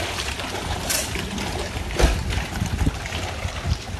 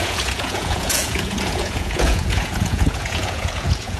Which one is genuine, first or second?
first